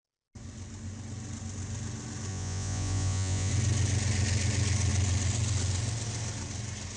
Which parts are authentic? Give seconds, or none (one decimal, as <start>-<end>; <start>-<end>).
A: 0.0-2.3; 3.5-7.0